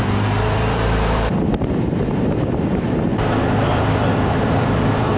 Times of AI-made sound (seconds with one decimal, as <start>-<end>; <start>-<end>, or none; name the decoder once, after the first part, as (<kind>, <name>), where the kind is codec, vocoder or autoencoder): 0.0-3.1 (vocoder, BigVGAN v2); 4.0-5.2